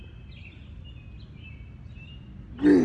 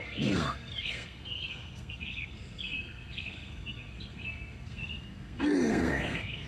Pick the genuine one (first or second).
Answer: first